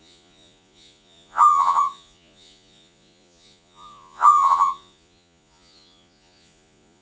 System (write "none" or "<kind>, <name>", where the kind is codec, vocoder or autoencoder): vocoder, Vocos